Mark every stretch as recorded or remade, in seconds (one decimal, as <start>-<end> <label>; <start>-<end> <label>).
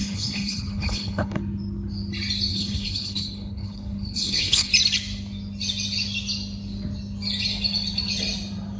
0.0-1.4 remade; 1.4-2.5 recorded; 2.5-4.7 remade; 4.7-8.8 recorded